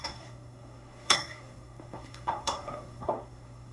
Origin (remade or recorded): remade